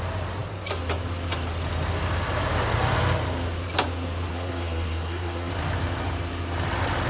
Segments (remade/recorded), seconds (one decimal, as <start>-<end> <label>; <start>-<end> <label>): 0.0-4.3 recorded; 4.3-5.5 remade; 5.5-7.1 recorded